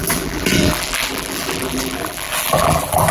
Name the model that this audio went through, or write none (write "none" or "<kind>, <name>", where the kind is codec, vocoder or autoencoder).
vocoder, BigVGAN v2